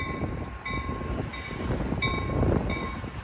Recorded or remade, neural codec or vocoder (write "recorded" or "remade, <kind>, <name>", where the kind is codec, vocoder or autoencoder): recorded